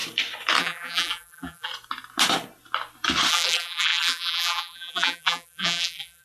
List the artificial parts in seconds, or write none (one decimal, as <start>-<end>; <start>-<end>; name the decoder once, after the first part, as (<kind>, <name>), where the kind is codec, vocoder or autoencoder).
0.6-1.7 (vocoder, BigVGAN v2); 3.3-6.2